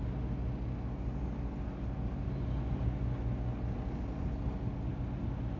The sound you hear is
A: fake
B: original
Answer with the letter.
B